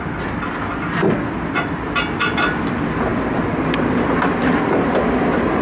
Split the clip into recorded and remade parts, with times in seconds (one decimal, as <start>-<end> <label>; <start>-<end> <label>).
0.0-5.6 recorded